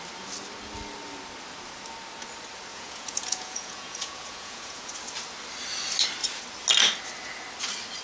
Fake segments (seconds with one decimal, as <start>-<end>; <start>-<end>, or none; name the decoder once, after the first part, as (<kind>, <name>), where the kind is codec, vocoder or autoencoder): 2.7-4.9 (vocoder, Vocos)